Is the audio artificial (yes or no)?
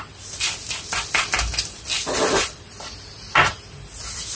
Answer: no